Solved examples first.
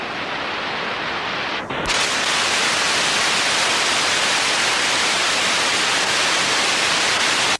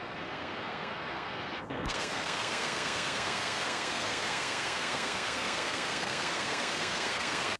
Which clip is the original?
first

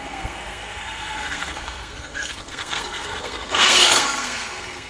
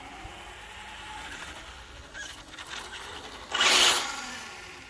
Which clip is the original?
second